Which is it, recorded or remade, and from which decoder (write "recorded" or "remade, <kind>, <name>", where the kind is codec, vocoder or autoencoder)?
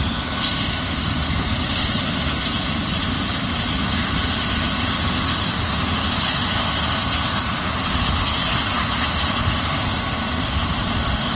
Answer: recorded